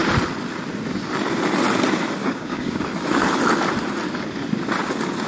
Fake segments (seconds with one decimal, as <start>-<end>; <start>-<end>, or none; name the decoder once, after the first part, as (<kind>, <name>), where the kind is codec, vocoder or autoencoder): 2.2-2.8 (codec, DAC)